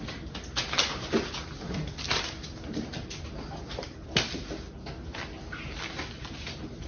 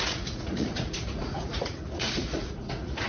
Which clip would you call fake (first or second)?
second